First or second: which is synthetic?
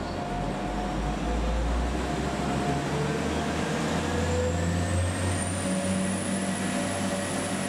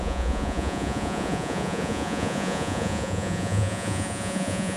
second